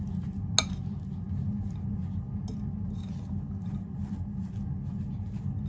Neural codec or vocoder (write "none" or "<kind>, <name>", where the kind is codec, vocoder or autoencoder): none